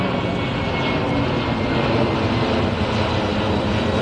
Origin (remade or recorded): recorded